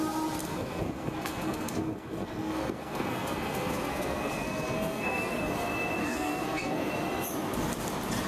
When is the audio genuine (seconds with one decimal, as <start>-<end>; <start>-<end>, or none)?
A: 0.0-0.4; 5.4-6.0; 6.9-8.3